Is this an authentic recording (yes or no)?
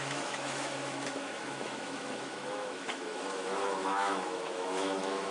no